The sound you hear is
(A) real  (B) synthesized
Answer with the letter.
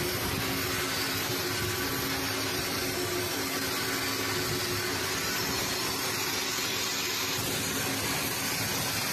A